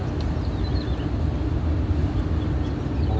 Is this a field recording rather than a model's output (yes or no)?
yes